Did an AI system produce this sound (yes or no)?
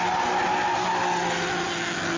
no